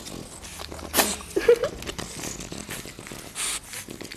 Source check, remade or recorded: recorded